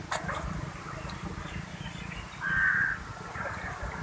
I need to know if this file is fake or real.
real